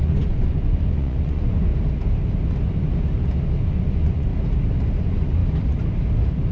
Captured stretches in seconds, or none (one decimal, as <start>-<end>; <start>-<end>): 1.7-3.7; 4.3-5.0; 5.4-6.5